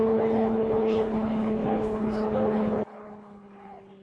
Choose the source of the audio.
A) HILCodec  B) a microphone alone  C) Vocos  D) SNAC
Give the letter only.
A